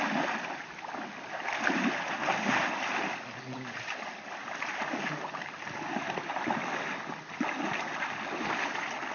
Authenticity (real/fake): real